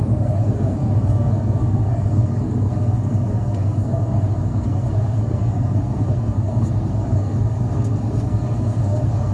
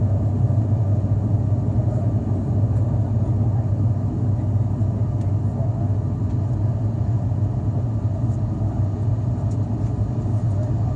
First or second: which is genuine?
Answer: second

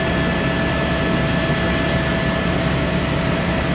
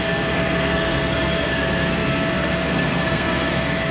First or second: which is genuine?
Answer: first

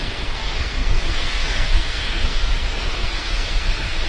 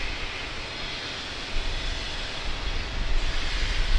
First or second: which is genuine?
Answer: second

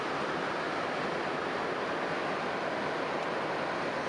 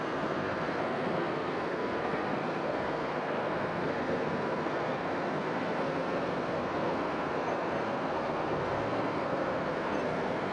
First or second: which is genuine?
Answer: first